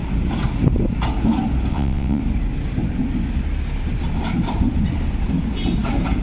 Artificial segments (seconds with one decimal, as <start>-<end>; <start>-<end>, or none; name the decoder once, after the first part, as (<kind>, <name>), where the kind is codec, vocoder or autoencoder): 1.7-2.2 (vocoder, WaveNeXt)